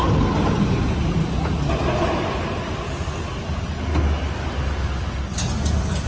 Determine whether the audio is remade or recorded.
recorded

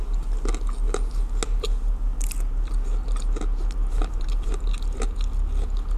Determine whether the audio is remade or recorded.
recorded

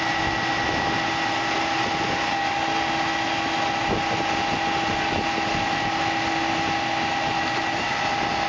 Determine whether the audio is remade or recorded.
recorded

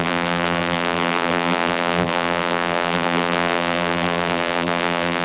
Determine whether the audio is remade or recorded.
remade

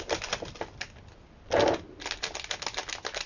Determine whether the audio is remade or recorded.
recorded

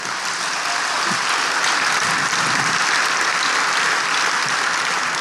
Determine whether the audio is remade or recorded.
recorded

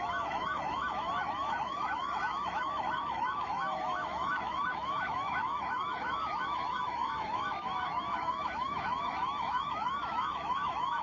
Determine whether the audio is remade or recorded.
remade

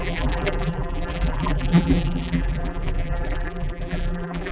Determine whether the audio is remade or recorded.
remade